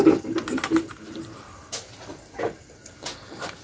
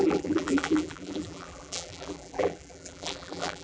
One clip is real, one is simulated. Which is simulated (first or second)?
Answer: second